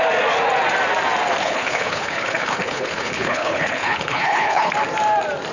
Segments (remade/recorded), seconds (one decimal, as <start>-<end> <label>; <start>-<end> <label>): 0.0-1.4 recorded; 1.4-4.7 remade; 4.7-5.5 recorded